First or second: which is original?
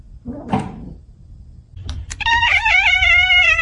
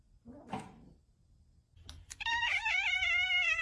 second